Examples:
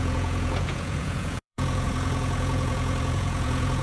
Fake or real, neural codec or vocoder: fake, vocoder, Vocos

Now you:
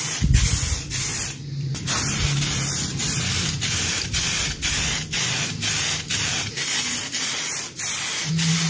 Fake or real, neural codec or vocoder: fake, vocoder, BigVGAN v2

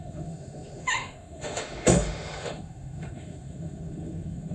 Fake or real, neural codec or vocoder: fake, autoencoder, DAC-VAE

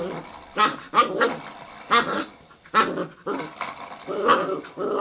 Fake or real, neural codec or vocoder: real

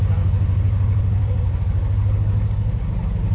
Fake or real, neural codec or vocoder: real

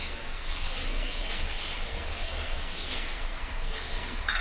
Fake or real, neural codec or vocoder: fake, codec, SNAC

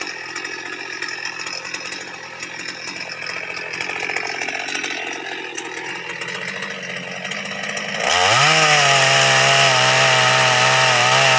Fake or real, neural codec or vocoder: real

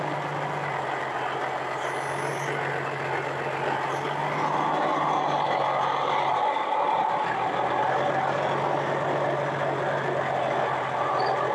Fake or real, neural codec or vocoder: real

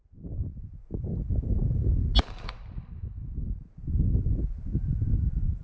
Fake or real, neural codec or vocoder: real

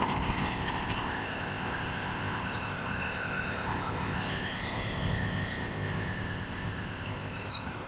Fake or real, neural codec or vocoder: fake, codec, ZipCodec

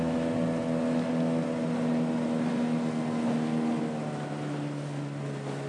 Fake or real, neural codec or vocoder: real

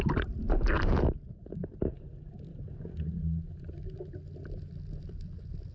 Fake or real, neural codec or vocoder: real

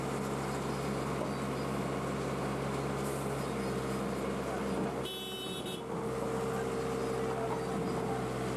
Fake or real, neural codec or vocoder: real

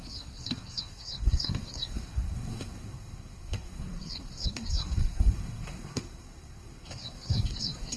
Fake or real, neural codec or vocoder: fake, codec, SNAC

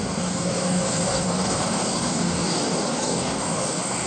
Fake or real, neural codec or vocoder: fake, codec, DAC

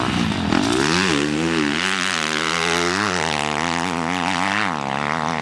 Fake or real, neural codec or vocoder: real